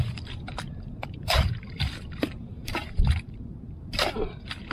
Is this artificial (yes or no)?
yes